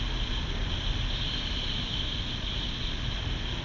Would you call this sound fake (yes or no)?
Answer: no